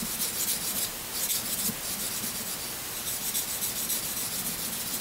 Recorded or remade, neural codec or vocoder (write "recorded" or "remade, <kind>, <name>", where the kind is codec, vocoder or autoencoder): recorded